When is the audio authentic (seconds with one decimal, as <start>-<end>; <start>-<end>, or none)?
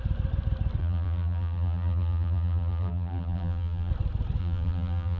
0.0-0.8; 3.9-4.4